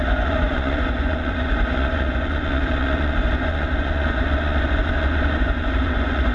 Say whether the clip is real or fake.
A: fake